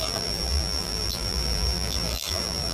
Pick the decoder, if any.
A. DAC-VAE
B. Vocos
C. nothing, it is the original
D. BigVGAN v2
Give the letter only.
D